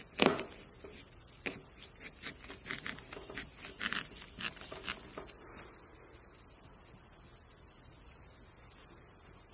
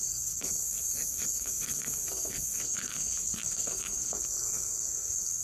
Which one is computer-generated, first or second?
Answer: second